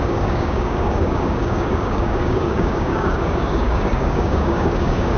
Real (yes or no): no